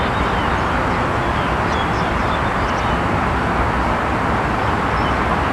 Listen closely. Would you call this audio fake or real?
real